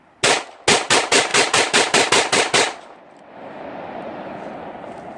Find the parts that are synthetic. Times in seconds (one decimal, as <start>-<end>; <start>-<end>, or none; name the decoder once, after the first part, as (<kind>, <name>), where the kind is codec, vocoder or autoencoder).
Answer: none